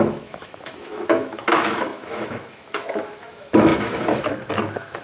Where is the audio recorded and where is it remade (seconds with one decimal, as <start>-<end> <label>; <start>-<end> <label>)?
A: 0.0-5.0 remade